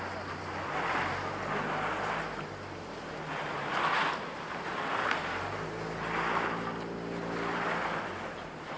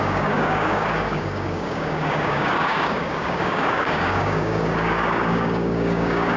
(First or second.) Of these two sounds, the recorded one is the first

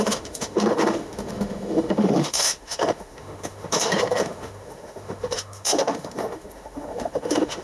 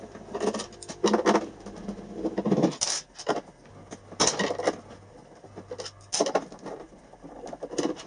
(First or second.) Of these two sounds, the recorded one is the second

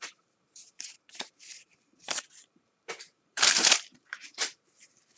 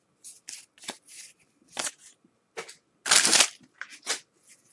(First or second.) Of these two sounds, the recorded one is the second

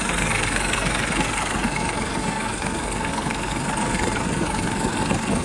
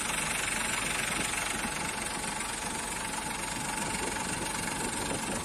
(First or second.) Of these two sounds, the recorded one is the second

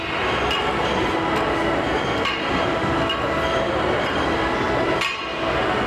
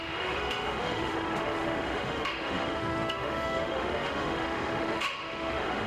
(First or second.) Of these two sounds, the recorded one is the first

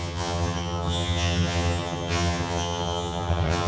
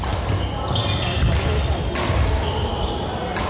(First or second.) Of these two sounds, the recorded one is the second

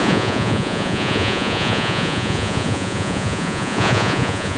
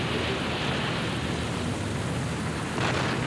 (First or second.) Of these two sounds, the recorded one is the second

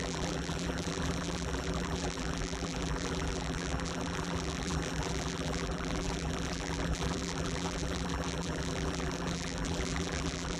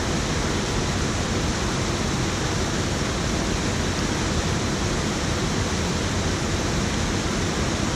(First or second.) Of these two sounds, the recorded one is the second